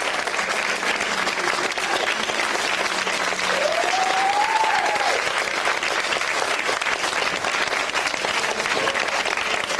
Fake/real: real